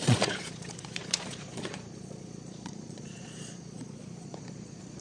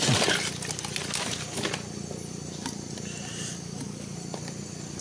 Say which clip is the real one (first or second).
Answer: second